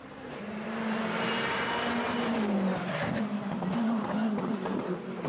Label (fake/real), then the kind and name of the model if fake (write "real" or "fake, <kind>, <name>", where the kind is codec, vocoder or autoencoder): fake, vocoder, BigVGAN v2